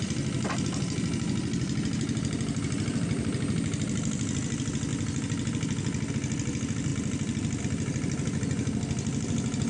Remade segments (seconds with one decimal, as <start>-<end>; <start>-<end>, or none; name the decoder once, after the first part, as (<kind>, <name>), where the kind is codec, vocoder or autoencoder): none